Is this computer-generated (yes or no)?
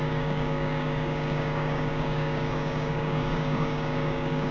yes